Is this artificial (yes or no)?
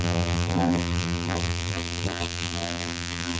yes